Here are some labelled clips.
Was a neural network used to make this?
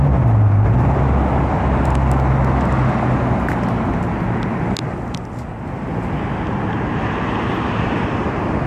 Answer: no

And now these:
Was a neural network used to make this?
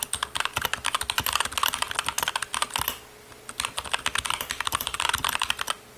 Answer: no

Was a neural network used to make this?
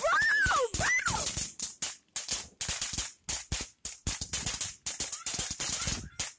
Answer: no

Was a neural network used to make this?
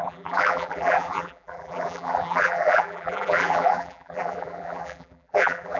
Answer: yes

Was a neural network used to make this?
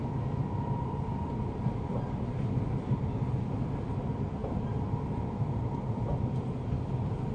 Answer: no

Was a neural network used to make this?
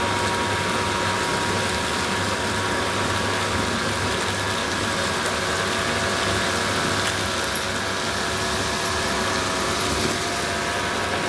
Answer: no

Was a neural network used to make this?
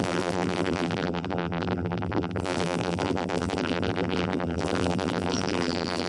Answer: yes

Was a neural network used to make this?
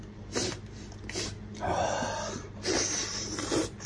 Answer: no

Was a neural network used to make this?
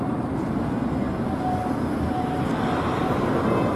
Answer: no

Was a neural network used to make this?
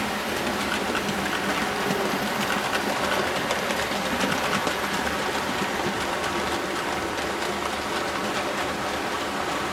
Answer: no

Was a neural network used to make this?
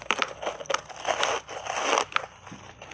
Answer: yes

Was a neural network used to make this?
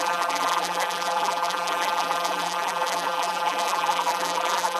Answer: yes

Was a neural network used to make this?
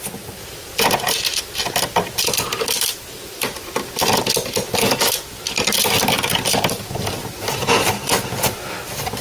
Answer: no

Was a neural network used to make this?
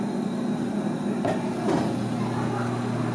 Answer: no